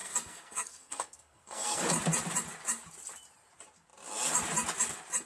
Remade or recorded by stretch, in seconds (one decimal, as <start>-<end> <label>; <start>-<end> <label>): 0.0-1.8 remade; 1.8-5.3 recorded